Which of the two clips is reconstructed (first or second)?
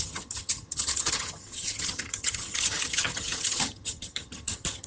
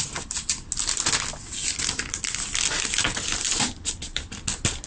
first